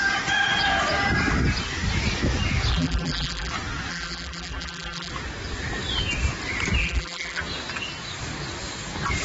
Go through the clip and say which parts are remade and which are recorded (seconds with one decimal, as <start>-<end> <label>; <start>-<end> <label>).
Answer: 0.0-2.7 recorded; 2.7-3.5 remade; 3.5-3.9 recorded; 3.9-5.1 remade; 5.1-6.8 recorded; 6.8-7.4 remade; 7.4-9.2 recorded